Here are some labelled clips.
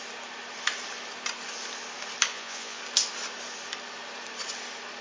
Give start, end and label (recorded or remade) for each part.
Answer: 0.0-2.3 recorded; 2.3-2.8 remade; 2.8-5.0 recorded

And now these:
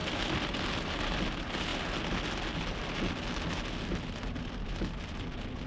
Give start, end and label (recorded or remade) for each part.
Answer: 0.0-5.7 recorded

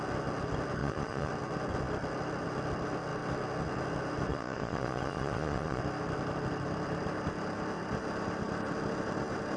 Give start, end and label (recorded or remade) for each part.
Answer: 0.0-0.8 recorded; 0.8-1.3 remade; 1.3-4.3 recorded; 4.3-5.8 remade; 5.8-9.6 recorded

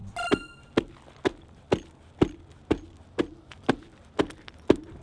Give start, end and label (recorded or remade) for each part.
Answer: 0.0-5.0 recorded

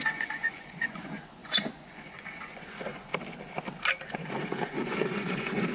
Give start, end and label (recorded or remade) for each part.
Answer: 0.0-3.1 remade; 3.1-4.1 recorded; 4.1-5.7 remade

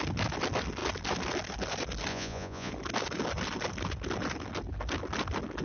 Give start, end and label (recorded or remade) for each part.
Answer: 0.0-2.1 recorded; 2.1-2.7 remade; 2.7-5.6 recorded